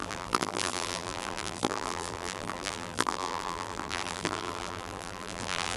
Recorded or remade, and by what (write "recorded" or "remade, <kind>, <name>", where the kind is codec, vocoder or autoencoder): remade, vocoder, BigVGAN v2